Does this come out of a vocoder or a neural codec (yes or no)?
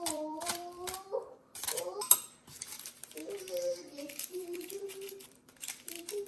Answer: yes